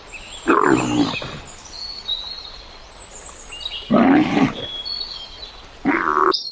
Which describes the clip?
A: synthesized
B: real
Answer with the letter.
B